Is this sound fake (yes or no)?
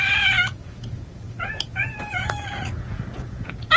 yes